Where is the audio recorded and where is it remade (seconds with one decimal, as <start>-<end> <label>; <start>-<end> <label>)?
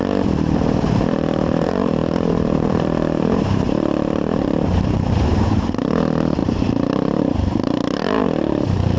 0.0-9.0 remade